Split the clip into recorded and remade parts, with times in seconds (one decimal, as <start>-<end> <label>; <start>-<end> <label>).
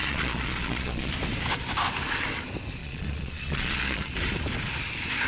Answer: 0.0-1.1 remade; 1.1-2.8 recorded; 2.8-4.1 remade; 4.1-5.3 recorded